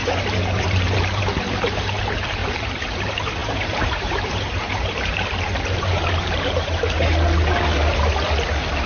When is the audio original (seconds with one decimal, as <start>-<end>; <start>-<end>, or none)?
1.2-2.4; 3.0-3.4; 6.9-8.9